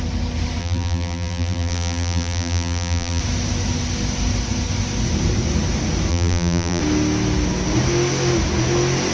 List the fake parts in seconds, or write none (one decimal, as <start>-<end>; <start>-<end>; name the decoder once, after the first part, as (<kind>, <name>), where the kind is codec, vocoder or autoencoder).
0.6-3.2 (vocoder, BigVGAN v2); 6.1-6.8